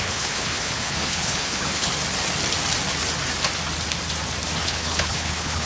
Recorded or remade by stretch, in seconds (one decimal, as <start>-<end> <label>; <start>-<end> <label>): 0.0-1.9 remade; 1.9-4.6 recorded; 4.6-5.7 remade